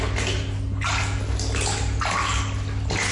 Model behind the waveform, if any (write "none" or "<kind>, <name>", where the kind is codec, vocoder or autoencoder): none